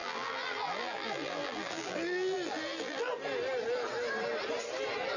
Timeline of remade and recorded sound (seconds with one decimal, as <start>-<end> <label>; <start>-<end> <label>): 0.0-3.1 remade; 3.1-5.2 recorded